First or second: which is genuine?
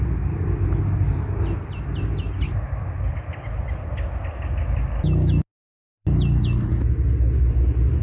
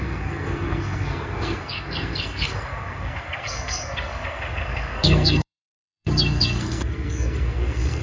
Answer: first